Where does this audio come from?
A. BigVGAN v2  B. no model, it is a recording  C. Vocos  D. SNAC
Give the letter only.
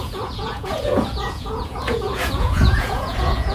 C